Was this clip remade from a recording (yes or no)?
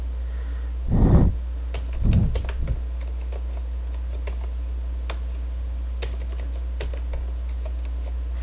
no